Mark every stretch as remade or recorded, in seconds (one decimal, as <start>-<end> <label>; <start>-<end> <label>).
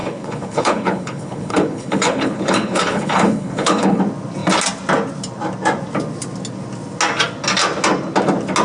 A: 0.0-4.0 remade; 4.0-8.6 recorded